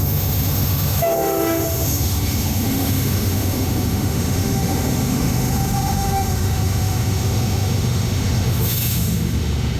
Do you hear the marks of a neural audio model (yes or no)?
yes